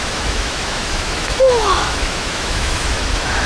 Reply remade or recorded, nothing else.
remade